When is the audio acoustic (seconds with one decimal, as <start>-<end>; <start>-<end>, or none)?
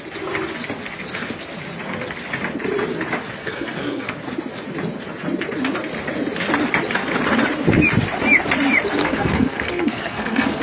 0.0-3.4; 4.1-9.0